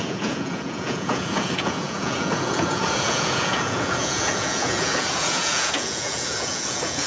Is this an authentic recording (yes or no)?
no